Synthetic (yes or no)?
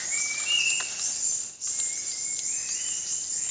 no